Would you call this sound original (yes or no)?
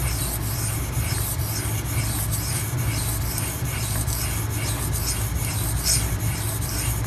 yes